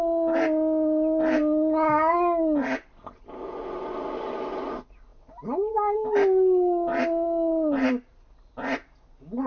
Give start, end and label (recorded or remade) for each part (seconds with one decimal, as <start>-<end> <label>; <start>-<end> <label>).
0.0-9.5 recorded